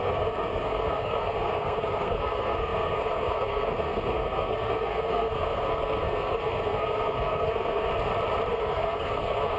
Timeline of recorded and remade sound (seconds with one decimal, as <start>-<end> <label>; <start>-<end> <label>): 0.0-7.9 remade; 7.9-8.5 recorded; 8.5-9.6 remade